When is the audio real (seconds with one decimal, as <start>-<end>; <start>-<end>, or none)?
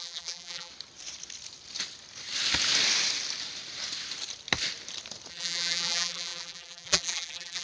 0.7-5.3